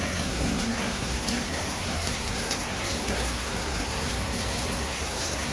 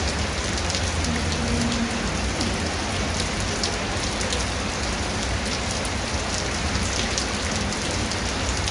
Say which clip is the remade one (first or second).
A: first